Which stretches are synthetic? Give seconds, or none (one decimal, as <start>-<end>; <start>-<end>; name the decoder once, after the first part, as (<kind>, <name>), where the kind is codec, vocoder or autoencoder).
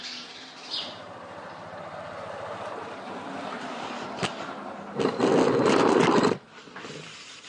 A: 0.0-4.3 (vocoder, BigVGAN v2); 5.0-7.5